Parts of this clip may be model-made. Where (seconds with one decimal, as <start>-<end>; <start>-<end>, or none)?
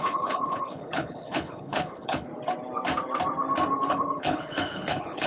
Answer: 0.0-2.3; 3.9-5.3